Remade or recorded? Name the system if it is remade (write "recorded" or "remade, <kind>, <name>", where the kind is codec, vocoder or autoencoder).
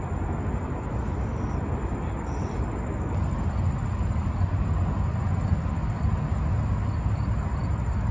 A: recorded